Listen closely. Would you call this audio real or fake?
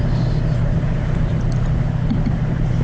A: real